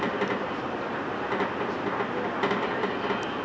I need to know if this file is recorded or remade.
recorded